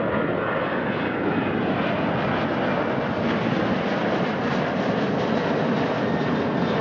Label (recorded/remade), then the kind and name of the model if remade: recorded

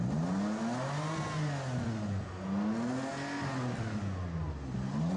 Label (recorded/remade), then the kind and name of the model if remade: recorded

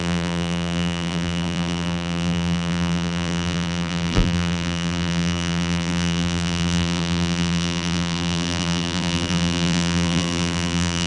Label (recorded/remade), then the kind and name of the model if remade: remade, vocoder, BigVGAN v2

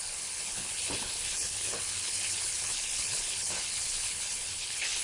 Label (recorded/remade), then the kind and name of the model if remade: remade, codec, HILCodec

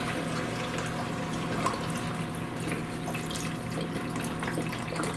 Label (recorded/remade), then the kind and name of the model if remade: recorded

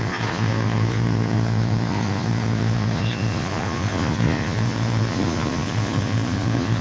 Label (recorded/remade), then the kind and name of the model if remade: remade, vocoder, Vocos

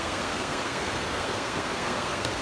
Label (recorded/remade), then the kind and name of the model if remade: remade, codec, SNAC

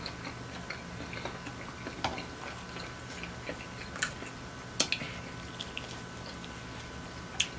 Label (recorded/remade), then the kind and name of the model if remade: recorded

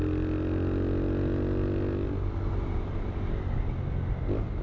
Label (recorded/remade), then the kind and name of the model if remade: recorded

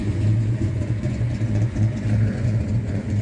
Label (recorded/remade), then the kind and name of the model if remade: remade, vocoder, Vocos